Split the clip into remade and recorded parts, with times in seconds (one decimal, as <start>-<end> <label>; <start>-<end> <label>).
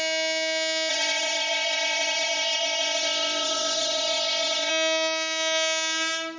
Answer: 0.0-0.9 recorded; 0.9-4.7 remade; 4.7-6.4 recorded